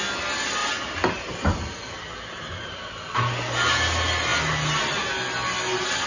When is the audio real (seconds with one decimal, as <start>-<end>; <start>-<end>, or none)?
0.0-6.1